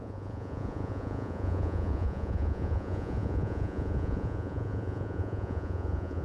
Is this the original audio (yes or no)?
no